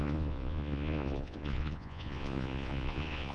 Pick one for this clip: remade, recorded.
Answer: remade